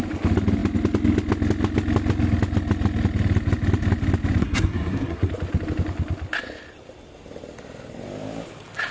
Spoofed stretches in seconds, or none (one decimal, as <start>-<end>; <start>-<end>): 4.4-5.3